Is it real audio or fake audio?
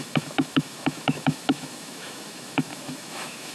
fake